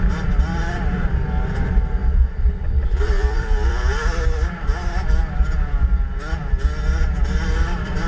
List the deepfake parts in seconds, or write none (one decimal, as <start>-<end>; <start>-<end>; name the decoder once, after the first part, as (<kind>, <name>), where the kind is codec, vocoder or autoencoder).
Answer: 2.0-3.7 (vocoder, BigVGAN v2)